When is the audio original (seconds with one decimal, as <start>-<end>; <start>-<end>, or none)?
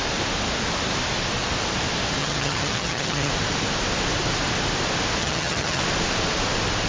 0.0-2.2; 3.3-5.2; 5.8-6.9